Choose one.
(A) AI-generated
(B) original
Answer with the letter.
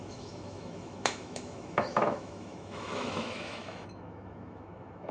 A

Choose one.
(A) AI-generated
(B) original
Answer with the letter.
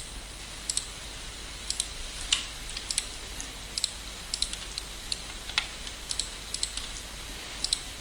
B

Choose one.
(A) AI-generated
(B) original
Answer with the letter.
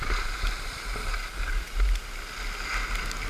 B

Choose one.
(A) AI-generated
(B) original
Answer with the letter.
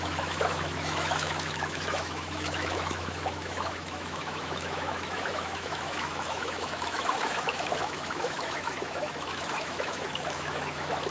A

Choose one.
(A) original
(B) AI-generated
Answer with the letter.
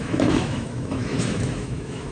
B